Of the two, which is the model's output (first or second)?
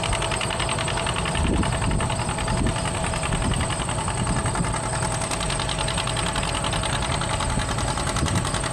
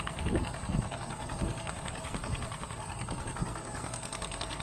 second